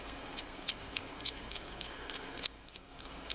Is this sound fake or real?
fake